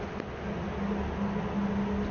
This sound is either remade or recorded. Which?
recorded